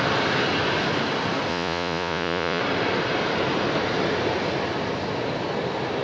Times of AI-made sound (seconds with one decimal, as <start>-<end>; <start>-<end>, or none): 1.5-2.6